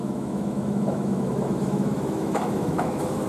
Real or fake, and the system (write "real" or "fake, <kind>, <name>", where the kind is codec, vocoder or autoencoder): fake, autoencoder, DAC-VAE